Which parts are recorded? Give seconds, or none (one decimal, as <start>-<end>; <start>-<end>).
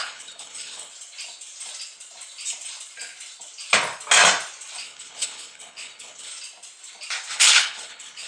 0.9-4.8; 6.3-7.3